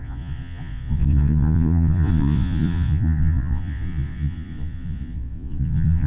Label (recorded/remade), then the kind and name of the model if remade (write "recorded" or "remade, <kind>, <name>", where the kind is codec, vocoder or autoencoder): remade, vocoder, Vocos